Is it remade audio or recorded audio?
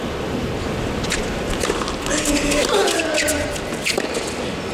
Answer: recorded